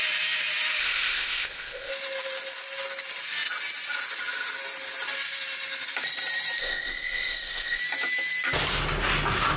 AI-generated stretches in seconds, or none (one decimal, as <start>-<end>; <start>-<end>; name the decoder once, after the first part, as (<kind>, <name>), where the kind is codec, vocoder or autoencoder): 0.8-1.9 (codec, ZipCodec); 6.6-7.8